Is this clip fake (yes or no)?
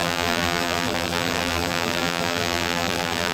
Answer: yes